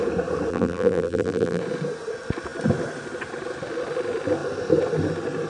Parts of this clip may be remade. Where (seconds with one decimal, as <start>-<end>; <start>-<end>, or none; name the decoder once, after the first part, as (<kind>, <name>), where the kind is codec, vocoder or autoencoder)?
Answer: 0.5-1.6 (vocoder, BigVGAN v2)